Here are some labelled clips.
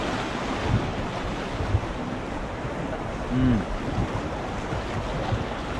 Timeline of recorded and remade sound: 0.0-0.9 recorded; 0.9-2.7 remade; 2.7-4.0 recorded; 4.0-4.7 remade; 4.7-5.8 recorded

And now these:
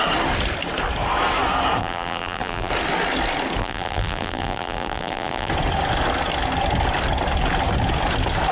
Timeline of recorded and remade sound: 0.0-1.8 recorded; 1.8-2.7 remade; 2.7-3.6 recorded; 3.6-5.5 remade; 5.5-8.5 recorded

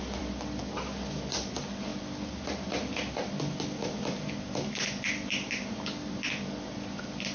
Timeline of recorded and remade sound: 0.0-0.6 remade; 0.6-1.3 recorded; 1.3-7.3 remade

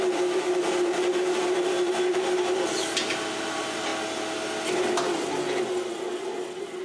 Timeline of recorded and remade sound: 0.0-3.9 remade; 3.9-6.8 recorded

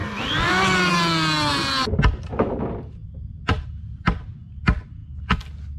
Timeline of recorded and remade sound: 0.0-0.9 remade; 0.9-3.0 recorded; 3.0-3.8 remade; 3.8-5.8 recorded

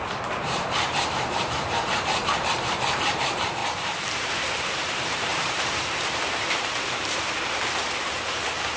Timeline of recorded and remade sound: 0.0-8.8 remade

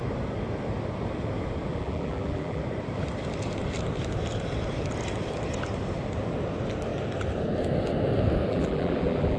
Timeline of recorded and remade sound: 0.0-1.7 recorded; 1.7-2.6 remade; 2.6-8.5 recorded; 8.5-9.4 remade

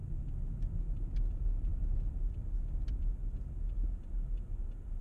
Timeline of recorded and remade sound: 0.0-5.0 recorded